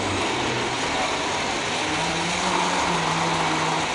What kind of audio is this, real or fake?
real